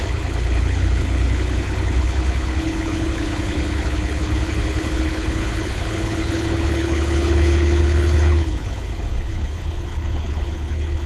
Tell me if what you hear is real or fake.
fake